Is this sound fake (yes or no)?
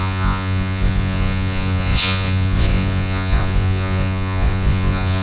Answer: yes